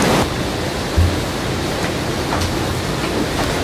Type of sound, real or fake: real